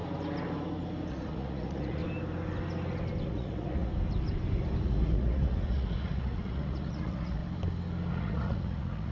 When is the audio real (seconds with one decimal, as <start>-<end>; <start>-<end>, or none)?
0.0-1.1; 2.0-3.3; 3.9-4.8; 7.4-8.1